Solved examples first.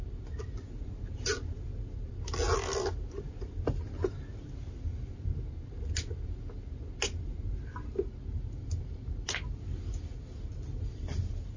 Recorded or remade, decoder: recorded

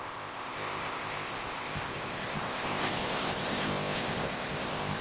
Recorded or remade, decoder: remade, codec, ZipCodec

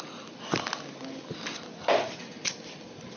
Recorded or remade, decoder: recorded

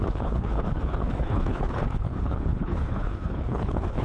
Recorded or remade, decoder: remade, codec, HILCodec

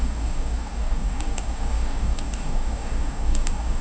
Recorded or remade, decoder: remade, codec, DAC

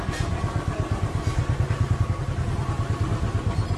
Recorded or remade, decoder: recorded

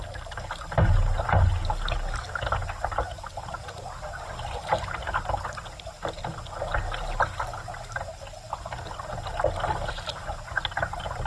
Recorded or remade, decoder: recorded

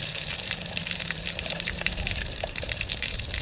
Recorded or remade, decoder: remade, vocoder, BigVGAN v2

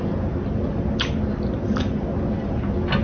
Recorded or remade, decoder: recorded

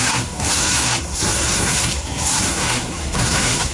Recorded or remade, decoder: remade, codec, SNAC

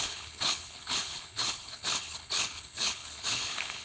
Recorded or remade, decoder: remade, codec, HILCodec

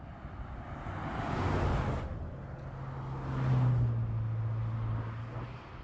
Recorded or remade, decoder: recorded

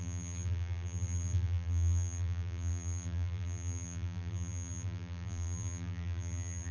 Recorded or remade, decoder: remade, vocoder, BigVGAN v2